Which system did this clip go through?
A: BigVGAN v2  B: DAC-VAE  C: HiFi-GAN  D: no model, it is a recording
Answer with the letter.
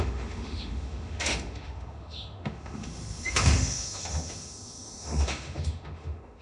B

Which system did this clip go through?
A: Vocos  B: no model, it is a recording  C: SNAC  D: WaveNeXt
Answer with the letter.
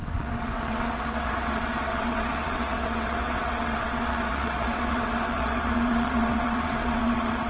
D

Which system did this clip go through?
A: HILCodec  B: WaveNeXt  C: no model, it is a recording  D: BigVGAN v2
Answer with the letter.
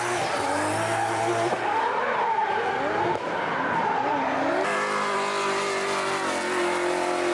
C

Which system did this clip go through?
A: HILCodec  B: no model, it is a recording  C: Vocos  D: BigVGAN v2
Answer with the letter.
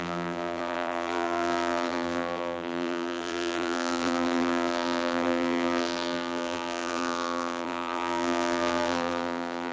D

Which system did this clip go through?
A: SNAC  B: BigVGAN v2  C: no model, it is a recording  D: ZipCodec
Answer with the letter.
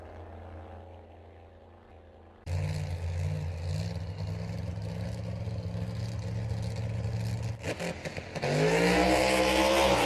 C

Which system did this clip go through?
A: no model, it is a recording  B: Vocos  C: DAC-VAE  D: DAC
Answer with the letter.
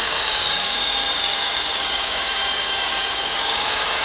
D